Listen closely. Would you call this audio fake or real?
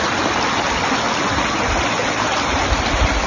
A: real